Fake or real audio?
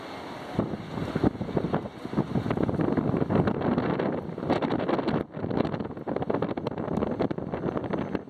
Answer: real